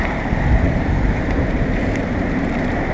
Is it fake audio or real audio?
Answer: fake